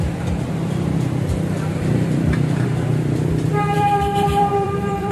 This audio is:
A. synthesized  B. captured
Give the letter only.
A